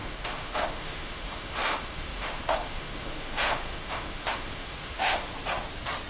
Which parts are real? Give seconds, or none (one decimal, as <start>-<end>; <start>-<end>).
5.3-6.1